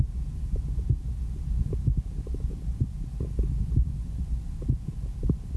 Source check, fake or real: real